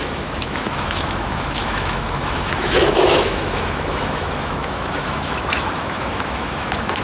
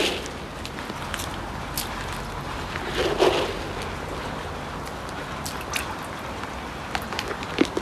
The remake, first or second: first